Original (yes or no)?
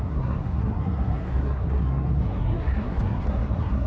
no